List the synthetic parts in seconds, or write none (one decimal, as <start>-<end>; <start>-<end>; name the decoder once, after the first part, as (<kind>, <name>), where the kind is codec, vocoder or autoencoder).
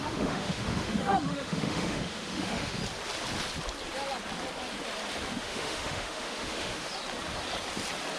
0.0-2.8 (autoencoder, DAC-VAE); 5.4-6.9